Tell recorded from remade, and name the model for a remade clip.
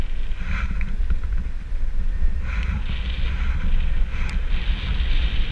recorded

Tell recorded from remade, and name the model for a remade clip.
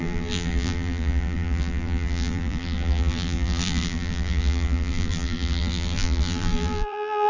remade, vocoder, BigVGAN v2